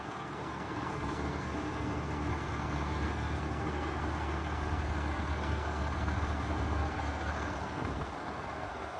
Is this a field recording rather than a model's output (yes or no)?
no